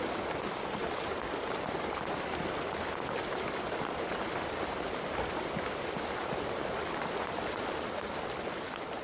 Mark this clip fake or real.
real